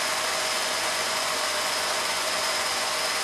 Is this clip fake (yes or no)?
yes